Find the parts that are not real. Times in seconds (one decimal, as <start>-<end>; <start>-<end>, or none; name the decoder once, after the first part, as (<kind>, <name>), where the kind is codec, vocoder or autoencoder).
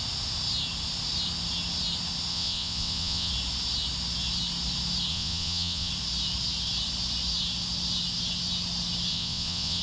2.3-3.3 (vocoder, WaveNeXt); 5.1-5.9; 9.1-9.8